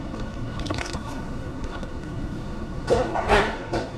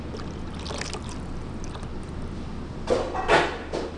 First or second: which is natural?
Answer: second